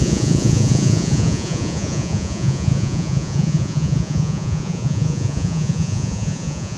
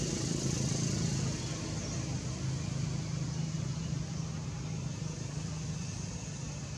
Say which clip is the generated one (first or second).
first